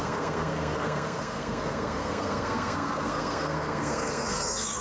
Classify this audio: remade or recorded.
remade